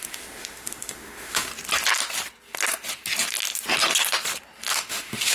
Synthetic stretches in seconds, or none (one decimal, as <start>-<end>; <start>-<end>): 0.0-1.5; 4.7-5.3